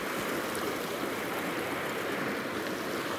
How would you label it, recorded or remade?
recorded